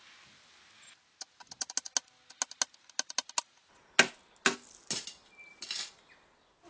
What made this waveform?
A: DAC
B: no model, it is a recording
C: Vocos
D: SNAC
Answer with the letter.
B